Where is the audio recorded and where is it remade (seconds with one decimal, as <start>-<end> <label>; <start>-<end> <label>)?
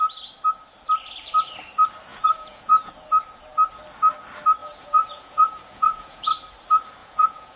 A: 0.0-2.1 recorded; 2.1-2.9 remade; 2.9-4.6 recorded; 4.6-6.3 remade; 6.3-7.0 recorded; 7.0-7.6 remade